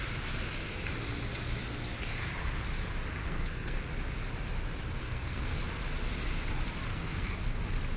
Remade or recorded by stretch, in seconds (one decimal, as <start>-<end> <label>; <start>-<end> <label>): 0.0-3.2 recorded; 3.2-3.8 remade; 3.8-5.0 recorded; 5.0-5.6 remade; 5.6-6.9 recorded; 6.9-7.6 remade; 7.6-8.0 recorded